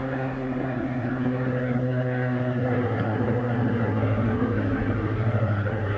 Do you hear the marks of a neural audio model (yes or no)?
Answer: yes